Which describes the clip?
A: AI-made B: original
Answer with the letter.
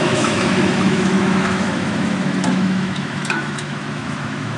A